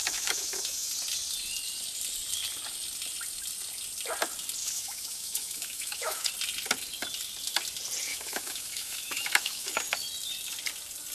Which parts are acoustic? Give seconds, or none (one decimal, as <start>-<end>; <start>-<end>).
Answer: 0.9-4.6; 6.3-8.1; 9.7-11.1